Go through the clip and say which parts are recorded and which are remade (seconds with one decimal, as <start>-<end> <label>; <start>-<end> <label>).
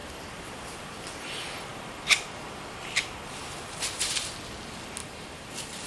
0.0-1.7 recorded; 1.7-4.3 remade; 4.3-5.0 recorded; 5.0-5.5 remade; 5.5-5.9 recorded